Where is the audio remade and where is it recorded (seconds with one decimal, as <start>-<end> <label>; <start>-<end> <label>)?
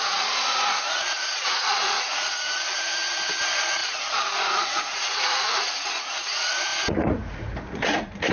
0.0-8.3 remade